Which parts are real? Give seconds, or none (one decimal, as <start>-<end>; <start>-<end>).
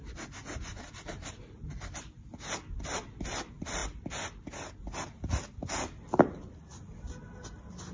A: 0.0-7.9